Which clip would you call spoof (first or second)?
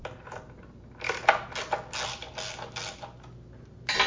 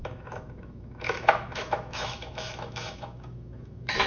second